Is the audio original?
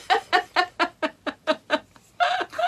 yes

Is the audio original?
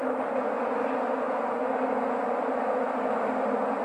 yes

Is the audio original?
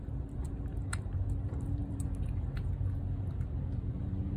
no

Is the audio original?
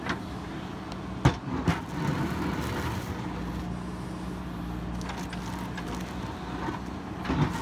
yes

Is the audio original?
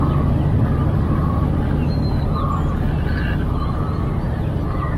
yes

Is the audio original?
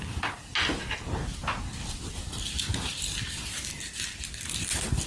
yes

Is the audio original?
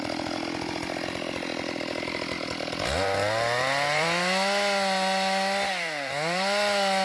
no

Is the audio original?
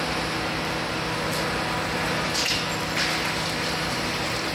yes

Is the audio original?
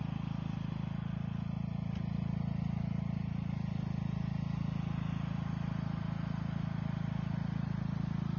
yes